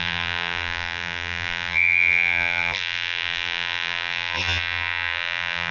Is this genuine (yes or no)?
no